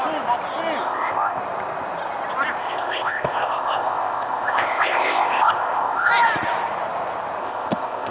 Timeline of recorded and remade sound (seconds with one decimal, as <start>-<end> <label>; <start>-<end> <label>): 0.0-0.8 recorded; 0.8-1.4 remade; 1.4-2.6 recorded; 2.6-6.1 remade; 6.1-7.4 recorded; 7.4-8.1 remade